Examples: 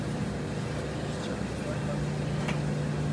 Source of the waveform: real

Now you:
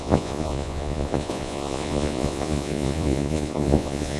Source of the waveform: fake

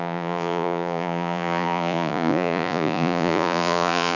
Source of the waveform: fake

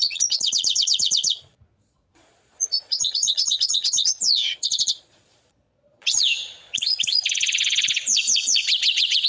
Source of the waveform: fake